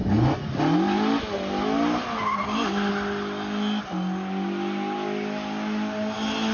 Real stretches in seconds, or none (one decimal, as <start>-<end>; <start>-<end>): 0.0-6.5